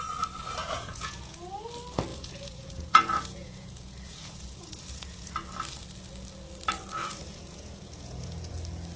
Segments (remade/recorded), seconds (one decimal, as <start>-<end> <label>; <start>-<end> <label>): 0.0-0.6 recorded; 0.6-1.4 remade; 1.4-2.1 recorded; 2.1-5.3 remade; 5.3-7.1 recorded; 7.1-8.5 remade; 8.5-9.0 recorded